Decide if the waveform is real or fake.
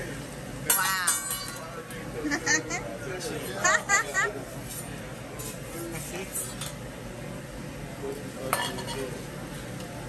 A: real